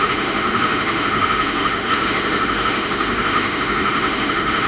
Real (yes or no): no